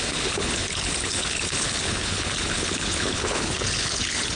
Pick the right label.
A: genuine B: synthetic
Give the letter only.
B